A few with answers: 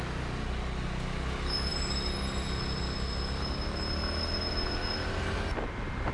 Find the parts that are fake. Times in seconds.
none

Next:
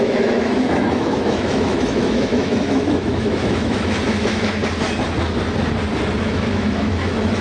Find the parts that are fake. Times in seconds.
0.0-4.6 (autoencoder, DAC-VAE); 6.2-7.4

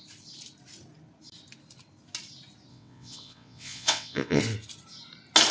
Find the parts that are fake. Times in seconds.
2.7-4.4 (vocoder, WaveNeXt)

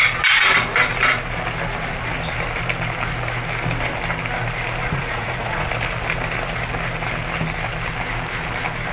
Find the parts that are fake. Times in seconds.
4.8-5.7 (vocoder, Vocos)

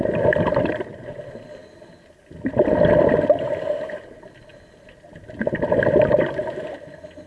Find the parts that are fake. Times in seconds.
none